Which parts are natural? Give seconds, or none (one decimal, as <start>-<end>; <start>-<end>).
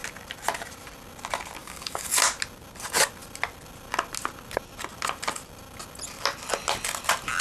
0.0-1.6; 2.1-7.4